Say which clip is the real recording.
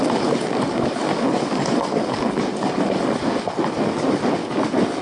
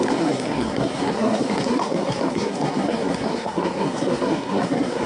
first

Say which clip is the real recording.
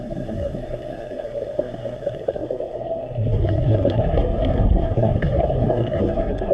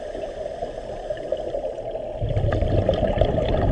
second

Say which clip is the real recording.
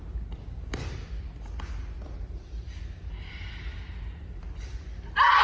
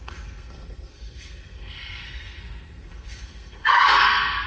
first